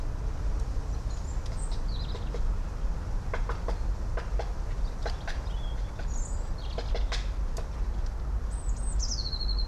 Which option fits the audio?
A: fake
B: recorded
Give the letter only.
B